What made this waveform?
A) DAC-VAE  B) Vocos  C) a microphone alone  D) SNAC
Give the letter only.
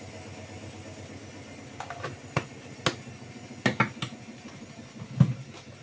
C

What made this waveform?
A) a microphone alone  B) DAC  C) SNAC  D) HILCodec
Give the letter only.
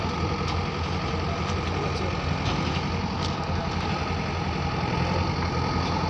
A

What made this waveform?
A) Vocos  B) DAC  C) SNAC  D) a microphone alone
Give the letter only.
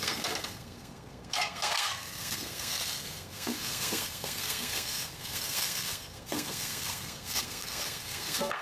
C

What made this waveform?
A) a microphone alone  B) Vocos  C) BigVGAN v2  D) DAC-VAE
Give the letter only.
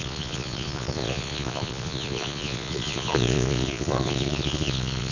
B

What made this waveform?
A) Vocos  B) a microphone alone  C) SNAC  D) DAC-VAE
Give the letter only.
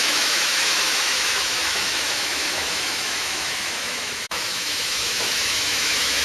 D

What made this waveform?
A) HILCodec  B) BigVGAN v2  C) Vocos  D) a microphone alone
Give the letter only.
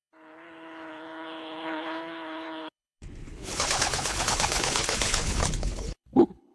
A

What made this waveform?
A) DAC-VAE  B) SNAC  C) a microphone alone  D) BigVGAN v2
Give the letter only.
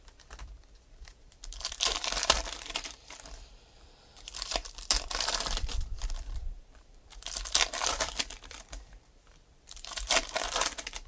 D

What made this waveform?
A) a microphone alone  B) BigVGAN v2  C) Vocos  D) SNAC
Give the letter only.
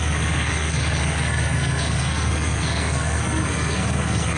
D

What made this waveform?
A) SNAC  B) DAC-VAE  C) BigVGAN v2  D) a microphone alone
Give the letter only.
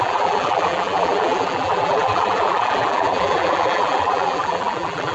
C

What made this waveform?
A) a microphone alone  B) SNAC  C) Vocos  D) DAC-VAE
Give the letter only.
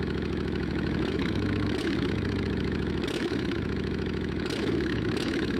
D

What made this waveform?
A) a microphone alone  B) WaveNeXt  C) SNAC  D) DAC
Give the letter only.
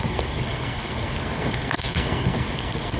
C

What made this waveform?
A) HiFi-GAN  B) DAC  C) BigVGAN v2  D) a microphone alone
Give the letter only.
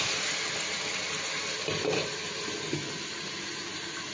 D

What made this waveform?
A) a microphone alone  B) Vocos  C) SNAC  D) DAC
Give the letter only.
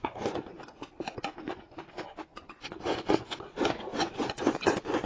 B